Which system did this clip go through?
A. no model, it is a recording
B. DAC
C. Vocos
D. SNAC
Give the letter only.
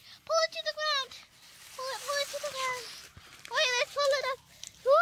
A